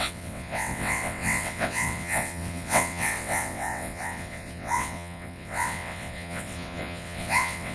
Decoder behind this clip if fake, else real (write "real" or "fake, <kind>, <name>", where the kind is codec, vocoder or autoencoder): fake, vocoder, WaveNeXt